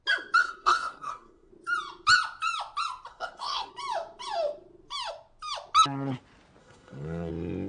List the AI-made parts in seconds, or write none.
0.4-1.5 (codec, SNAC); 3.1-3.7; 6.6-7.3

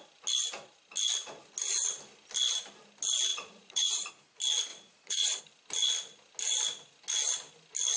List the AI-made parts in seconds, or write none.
3.3-4.1 (vocoder, Vocos); 4.7-5.4

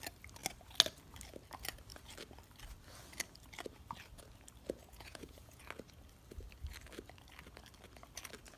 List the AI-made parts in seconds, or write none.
4.8-5.6 (vocoder, Vocos)

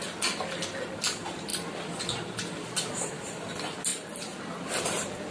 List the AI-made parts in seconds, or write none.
1.5-3.5 (vocoder, BigVGAN v2)

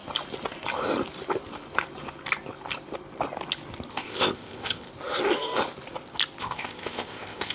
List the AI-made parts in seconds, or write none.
3.9-4.9 (codec, ZipCodec); 6.4-7.5

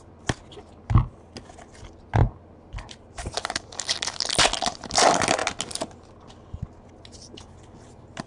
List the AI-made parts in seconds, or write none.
none

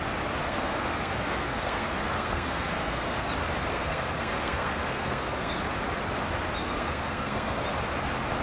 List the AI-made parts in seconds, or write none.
0.4-3.3 (codec, SNAC); 3.7-5.6; 6.6-7.6

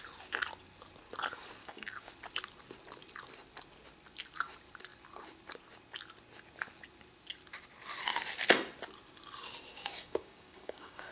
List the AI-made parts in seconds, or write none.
1.6-2.1 (codec, DAC); 9.7-11.1